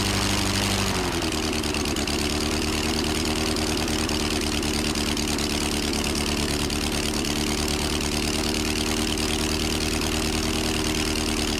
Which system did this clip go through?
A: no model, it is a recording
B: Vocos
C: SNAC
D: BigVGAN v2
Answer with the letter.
A